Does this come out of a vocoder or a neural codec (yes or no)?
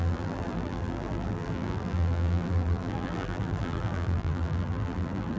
yes